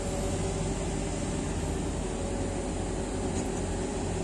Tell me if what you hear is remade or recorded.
recorded